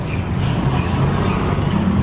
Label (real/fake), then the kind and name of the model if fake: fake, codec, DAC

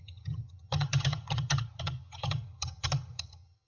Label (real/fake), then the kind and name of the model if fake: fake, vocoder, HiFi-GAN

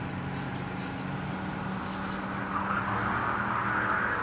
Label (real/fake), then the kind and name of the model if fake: real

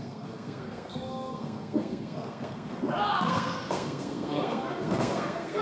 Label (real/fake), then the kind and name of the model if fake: fake, codec, SNAC